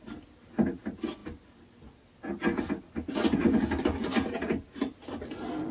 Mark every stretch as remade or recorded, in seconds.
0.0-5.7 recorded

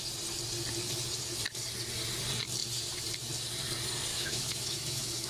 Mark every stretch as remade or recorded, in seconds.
0.0-4.1 recorded; 4.1-5.3 remade

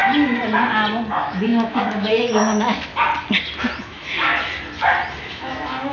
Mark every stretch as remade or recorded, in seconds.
0.0-1.1 recorded; 1.1-2.9 remade; 2.9-3.8 recorded; 3.8-4.3 remade; 4.3-5.3 recorded; 5.3-5.9 remade